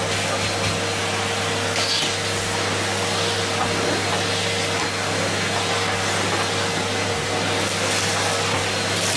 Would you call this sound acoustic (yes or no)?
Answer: yes